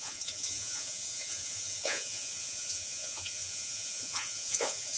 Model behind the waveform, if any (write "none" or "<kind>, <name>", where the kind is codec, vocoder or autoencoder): vocoder, Vocos